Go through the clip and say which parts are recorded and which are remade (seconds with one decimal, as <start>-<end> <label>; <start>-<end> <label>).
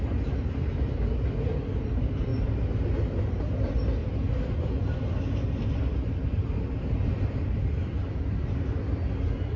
0.0-5.9 recorded; 5.9-7.1 remade; 7.1-8.0 recorded; 8.0-8.6 remade; 8.6-9.6 recorded